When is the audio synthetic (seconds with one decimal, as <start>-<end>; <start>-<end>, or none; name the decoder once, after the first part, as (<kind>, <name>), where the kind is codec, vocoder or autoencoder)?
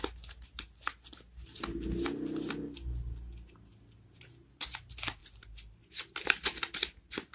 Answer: none